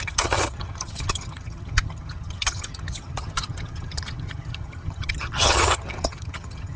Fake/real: fake